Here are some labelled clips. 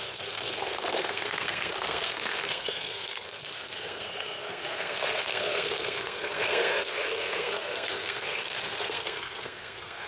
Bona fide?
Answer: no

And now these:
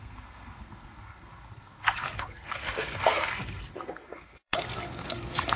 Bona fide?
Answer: no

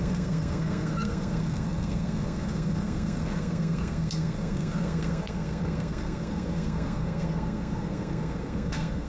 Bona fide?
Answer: no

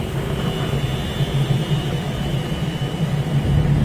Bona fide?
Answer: yes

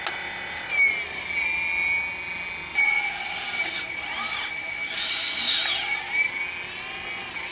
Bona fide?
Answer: yes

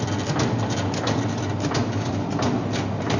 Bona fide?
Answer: yes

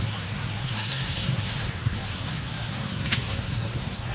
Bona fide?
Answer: no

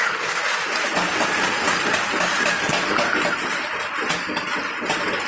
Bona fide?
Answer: yes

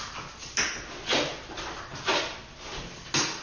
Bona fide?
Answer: yes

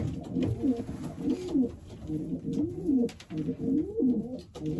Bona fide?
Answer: yes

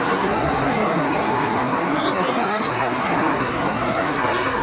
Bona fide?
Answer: no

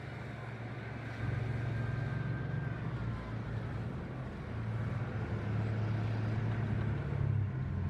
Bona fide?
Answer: yes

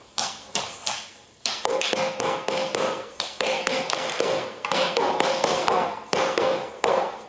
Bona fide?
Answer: no